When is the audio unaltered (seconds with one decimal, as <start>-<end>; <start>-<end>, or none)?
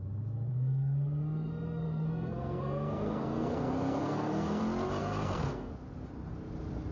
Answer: 0.0-0.5; 4.6-5.0; 5.7-6.9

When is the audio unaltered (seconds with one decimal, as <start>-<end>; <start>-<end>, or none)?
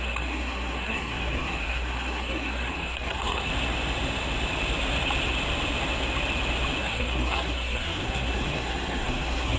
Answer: 3.5-6.8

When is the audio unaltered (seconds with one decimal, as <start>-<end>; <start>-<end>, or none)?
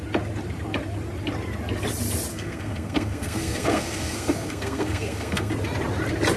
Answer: 0.0-2.3; 5.5-6.4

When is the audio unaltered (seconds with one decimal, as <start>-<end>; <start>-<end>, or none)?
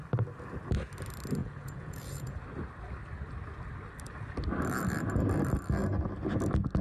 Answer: 0.0-1.4; 2.4-6.8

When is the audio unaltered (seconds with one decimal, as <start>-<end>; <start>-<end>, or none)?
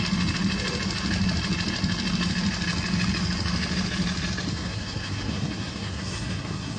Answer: 0.0-4.5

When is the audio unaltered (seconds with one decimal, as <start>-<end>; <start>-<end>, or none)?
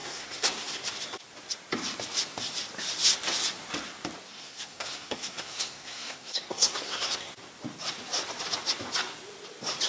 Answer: 0.8-4.3; 7.3-9.9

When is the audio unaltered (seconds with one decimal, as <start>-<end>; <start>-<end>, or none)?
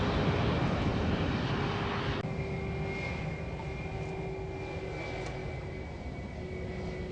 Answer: 0.0-5.4; 6.2-7.1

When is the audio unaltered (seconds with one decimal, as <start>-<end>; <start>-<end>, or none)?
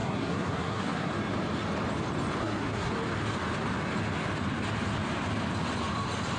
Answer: 1.1-2.4; 2.9-6.4